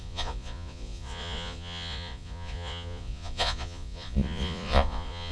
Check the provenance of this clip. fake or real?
fake